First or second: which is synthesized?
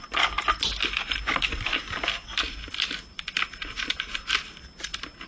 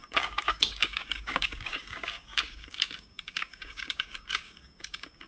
second